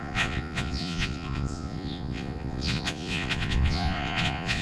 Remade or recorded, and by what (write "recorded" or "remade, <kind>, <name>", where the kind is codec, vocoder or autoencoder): remade, vocoder, Vocos